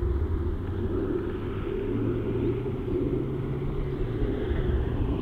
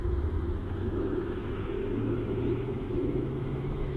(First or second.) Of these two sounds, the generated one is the second